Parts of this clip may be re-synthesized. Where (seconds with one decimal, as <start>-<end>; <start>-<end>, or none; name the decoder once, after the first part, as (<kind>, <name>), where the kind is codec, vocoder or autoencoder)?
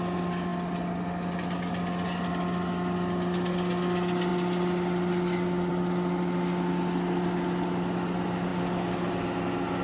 none